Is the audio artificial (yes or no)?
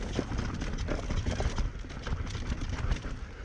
no